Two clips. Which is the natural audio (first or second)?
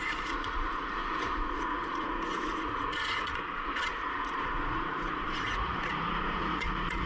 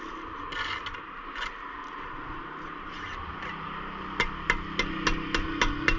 second